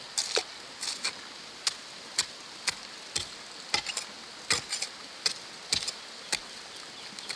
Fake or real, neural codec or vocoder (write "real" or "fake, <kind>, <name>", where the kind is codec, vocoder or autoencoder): real